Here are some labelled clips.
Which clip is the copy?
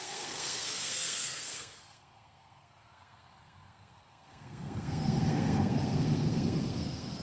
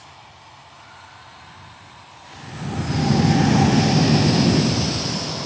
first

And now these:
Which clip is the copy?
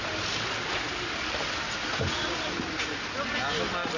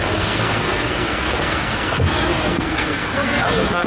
second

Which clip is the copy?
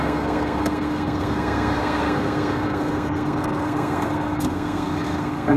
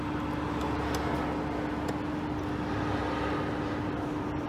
first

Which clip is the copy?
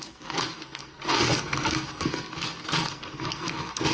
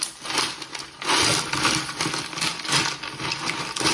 first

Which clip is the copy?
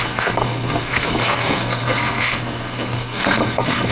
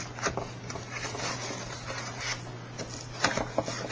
first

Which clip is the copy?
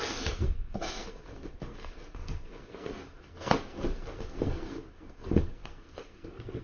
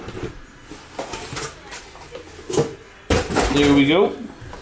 first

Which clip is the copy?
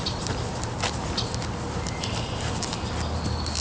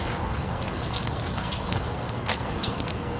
second